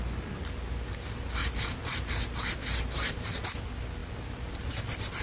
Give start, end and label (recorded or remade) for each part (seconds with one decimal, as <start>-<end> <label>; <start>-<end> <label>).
0.0-1.4 recorded; 1.4-3.5 remade; 3.5-5.2 recorded